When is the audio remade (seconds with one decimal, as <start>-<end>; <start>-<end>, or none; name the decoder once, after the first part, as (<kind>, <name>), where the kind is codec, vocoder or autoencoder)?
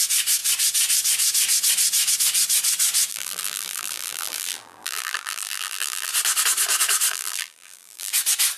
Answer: 3.1-6.1 (vocoder, BigVGAN v2); 7.1-8.1